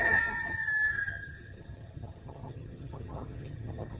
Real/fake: fake